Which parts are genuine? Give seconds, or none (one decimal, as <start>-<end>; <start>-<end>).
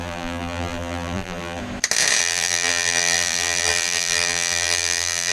1.6-2.2